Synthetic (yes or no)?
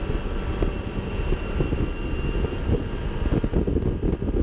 no